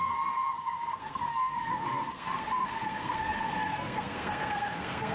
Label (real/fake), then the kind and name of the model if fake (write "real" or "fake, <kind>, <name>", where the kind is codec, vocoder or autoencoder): fake, codec, SNAC